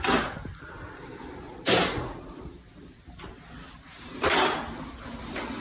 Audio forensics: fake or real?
real